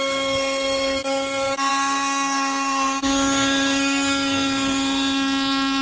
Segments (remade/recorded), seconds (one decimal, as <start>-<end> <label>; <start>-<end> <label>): 0.0-5.8 remade